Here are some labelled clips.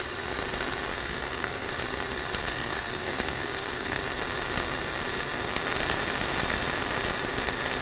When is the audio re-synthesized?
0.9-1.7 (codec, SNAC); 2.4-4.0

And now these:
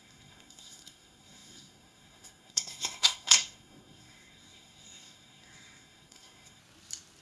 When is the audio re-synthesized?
0.0-6.6 (codec, SNAC)

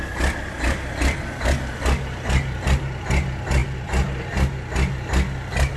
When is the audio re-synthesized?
none

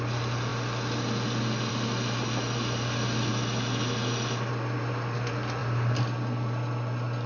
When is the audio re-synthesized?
none